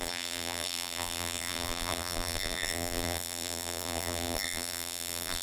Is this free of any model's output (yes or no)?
no